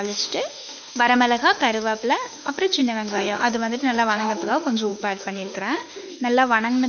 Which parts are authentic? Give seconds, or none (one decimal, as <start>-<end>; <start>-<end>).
none